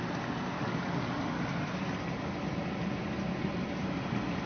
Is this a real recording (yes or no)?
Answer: yes